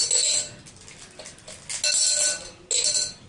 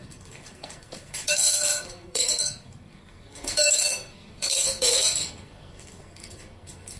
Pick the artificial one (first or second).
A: second